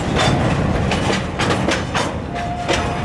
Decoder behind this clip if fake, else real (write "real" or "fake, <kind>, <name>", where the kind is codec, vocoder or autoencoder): real